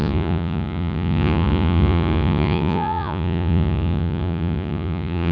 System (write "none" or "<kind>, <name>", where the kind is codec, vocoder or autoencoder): vocoder, Vocos